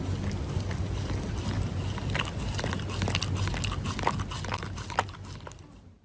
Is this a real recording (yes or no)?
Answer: yes